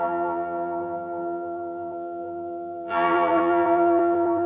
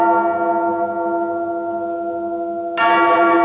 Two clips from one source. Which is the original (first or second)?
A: second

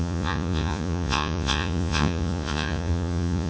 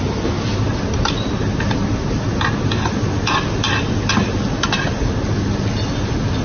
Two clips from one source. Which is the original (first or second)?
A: second